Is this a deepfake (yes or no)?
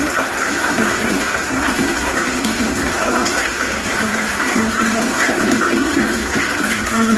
yes